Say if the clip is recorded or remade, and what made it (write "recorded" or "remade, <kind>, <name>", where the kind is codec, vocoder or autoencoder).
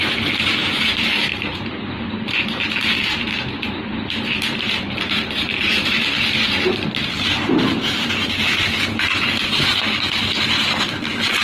remade, vocoder, BigVGAN v2